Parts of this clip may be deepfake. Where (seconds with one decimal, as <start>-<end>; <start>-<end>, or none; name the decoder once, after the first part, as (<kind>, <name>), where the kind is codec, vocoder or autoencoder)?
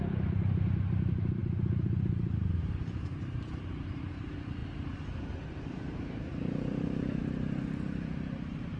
0.0-1.4 (vocoder, BigVGAN v2); 2.0-4.6; 5.5-8.8